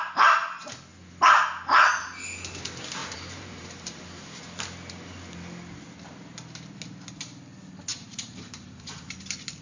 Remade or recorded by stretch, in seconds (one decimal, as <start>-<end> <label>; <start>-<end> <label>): 0.0-3.0 recorded; 3.0-4.4 remade; 4.4-7.9 recorded; 7.9-9.1 remade; 9.1-9.6 recorded